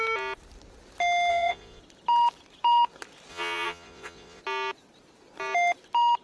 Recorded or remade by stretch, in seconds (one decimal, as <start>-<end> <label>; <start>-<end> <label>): 0.0-1.3 recorded; 1.3-1.8 remade; 1.8-3.3 recorded; 3.3-4.4 remade; 4.4-6.2 recorded